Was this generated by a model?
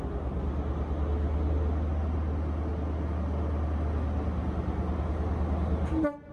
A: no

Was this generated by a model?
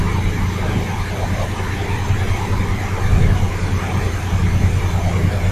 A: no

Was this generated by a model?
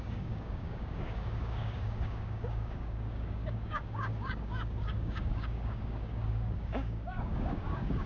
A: yes